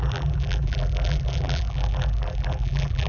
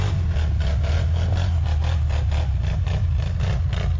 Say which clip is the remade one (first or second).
first